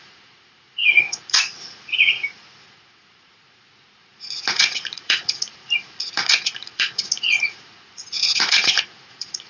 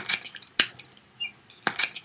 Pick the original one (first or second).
second